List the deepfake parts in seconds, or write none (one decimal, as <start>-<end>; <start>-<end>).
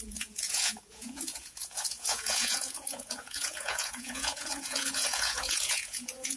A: 0.0-6.4